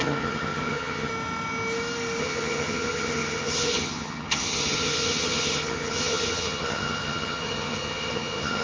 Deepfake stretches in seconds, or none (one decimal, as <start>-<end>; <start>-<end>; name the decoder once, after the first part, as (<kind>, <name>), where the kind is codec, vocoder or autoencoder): 0.0-1.1 (vocoder, HiFi-GAN); 2.2-8.6